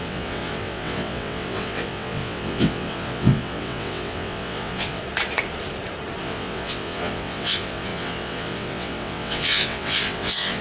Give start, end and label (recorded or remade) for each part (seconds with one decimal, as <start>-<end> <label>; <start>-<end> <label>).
0.0-5.0 remade; 5.0-6.2 recorded; 6.2-10.6 remade